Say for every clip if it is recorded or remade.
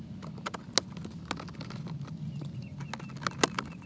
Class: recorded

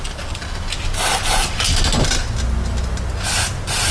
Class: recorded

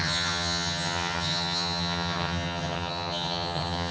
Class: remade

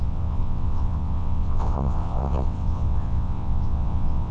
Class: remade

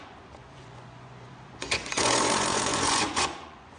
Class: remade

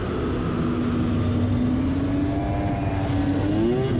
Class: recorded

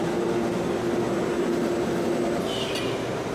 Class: recorded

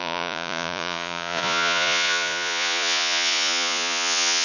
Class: remade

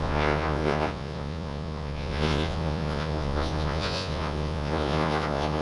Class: remade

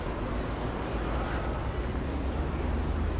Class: recorded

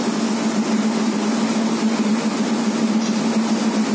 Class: recorded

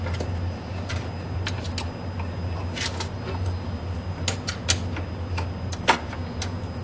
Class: recorded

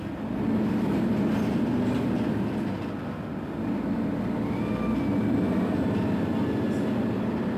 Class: recorded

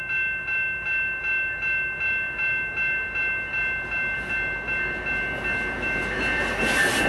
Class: recorded